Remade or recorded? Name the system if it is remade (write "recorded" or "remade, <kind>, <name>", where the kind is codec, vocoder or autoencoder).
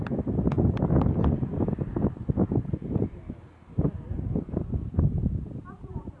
recorded